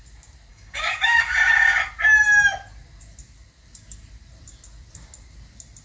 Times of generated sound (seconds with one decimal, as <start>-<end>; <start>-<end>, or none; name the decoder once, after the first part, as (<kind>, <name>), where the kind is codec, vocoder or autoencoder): 0.5-1.8 (codec, DAC)

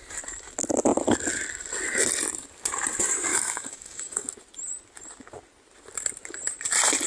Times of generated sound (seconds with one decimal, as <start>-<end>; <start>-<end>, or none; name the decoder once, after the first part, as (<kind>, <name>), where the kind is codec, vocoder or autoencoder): 3.3-4.3 (codec, DAC)